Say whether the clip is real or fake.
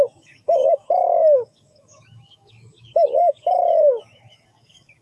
fake